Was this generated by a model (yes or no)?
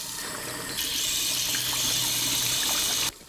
no